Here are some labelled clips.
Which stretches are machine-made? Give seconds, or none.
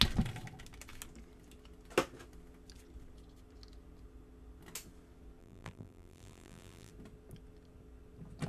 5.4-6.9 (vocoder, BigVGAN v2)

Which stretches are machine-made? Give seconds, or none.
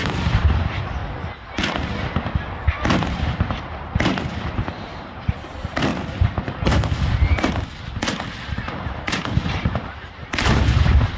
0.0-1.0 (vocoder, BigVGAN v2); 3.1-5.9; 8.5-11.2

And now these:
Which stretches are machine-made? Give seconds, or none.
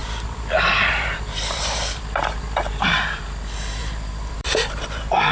0.0-3.2 (vocoder, BigVGAN v2); 3.8-5.3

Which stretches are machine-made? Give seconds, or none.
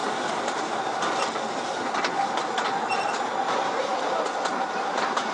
3.2-3.9 (vocoder, BigVGAN v2); 4.5-5.3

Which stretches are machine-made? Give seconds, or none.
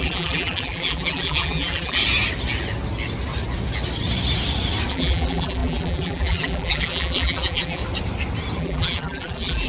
0.0-2.0 (vocoder, BigVGAN v2); 4.9-7.8; 8.6-9.7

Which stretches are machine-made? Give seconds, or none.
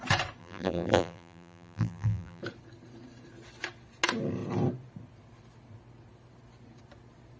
0.4-2.4 (vocoder, BigVGAN v2)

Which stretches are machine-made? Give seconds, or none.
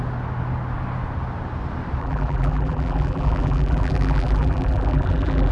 2.0-5.5 (vocoder, BigVGAN v2)